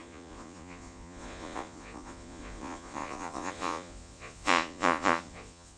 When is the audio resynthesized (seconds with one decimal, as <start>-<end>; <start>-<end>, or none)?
0.0-5.8